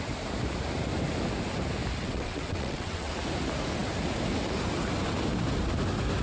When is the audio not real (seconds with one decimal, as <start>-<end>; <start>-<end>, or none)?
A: 2.0-3.1